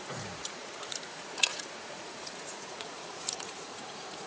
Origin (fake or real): fake